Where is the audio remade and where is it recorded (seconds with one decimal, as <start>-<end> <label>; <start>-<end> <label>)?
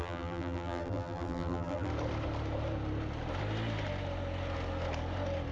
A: 0.0-1.9 remade; 1.9-5.5 recorded